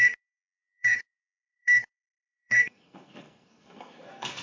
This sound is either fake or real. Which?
fake